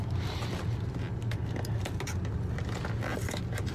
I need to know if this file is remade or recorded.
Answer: recorded